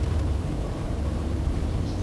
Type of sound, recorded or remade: remade